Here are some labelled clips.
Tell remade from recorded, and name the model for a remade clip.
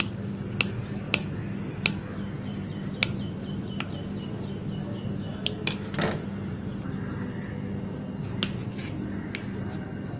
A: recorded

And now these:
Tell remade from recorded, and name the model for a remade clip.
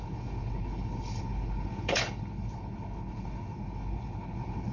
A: remade, codec, HILCodec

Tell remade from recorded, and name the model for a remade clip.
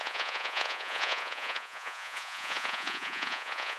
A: remade, vocoder, Vocos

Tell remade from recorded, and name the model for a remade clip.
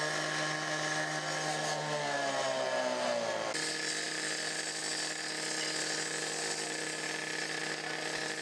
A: recorded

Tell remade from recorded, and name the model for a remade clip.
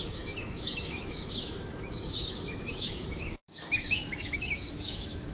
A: remade, autoencoder, DAC-VAE